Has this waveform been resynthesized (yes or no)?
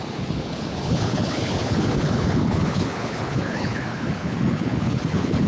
yes